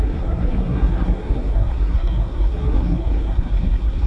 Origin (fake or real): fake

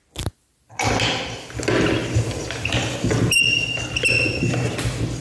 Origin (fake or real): real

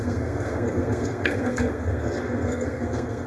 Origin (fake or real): fake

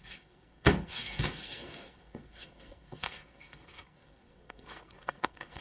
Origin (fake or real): fake